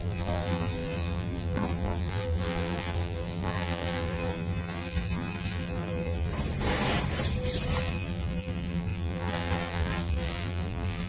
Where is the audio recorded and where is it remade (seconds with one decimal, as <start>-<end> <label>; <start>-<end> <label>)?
0.0-6.3 remade; 6.3-7.8 recorded; 7.8-11.1 remade